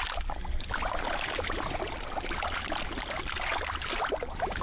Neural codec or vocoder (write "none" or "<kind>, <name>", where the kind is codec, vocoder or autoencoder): none